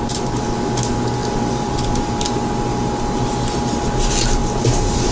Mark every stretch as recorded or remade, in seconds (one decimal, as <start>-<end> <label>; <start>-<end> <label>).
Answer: 0.0-5.1 recorded